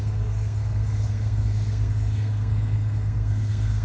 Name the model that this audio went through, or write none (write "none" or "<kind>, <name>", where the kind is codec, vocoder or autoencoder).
codec, SNAC